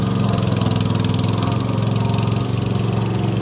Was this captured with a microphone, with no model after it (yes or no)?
yes